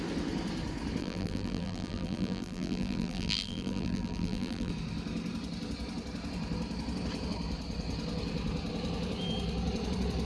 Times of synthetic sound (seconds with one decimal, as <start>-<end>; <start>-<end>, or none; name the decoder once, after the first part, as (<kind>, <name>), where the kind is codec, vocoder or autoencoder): 1.0-4.7 (vocoder, BigVGAN v2)